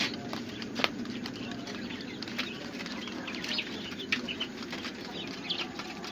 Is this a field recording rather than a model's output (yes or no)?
yes